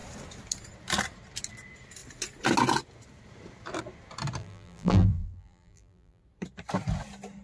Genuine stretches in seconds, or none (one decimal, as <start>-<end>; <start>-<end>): 0.0-4.4; 6.2-7.4